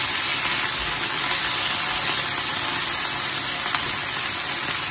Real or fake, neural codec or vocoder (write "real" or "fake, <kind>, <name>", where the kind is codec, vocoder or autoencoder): real